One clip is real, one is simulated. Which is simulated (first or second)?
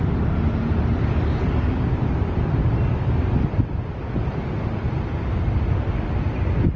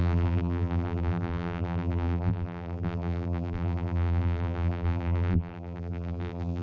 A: second